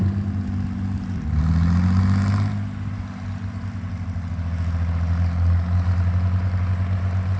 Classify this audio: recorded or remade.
recorded